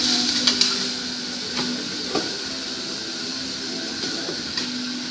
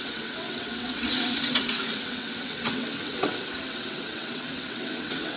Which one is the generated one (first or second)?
second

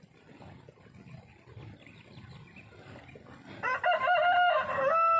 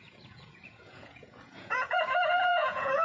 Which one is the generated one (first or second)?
second